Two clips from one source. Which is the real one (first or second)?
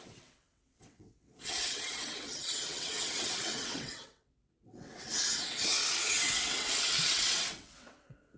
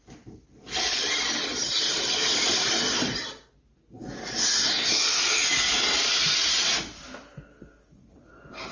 second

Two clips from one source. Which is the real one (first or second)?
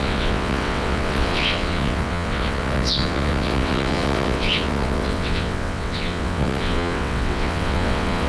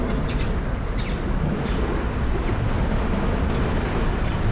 second